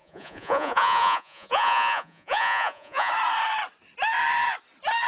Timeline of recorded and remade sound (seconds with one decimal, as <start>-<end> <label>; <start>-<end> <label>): 0.0-3.1 remade; 3.1-5.1 recorded